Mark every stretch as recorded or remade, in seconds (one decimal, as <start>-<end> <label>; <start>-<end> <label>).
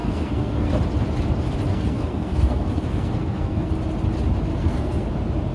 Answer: 0.0-0.7 remade; 0.7-1.7 recorded; 1.7-3.7 remade; 3.7-4.5 recorded; 4.5-5.1 remade; 5.1-5.5 recorded